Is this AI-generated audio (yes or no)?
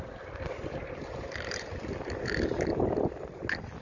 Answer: no